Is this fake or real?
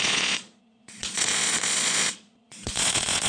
fake